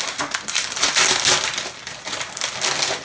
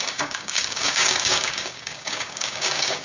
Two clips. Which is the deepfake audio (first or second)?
second